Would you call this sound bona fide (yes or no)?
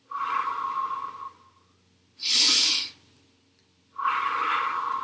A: yes